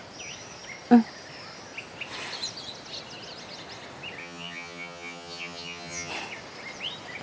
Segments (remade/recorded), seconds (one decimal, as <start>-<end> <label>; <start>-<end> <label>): 0.0-4.2 recorded; 4.2-6.1 remade; 6.1-7.2 recorded